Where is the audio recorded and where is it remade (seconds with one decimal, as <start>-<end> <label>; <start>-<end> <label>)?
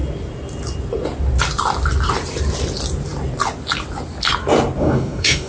0.0-4.8 recorded; 4.8-5.5 remade